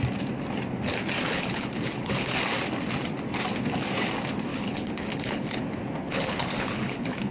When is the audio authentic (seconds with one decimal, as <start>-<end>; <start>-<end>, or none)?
0.0-1.2; 2.4-4.5; 5.6-6.0